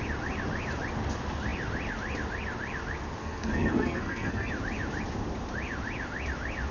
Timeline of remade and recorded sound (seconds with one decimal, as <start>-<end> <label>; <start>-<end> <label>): 0.0-3.2 recorded; 3.2-4.5 remade; 4.5-6.7 recorded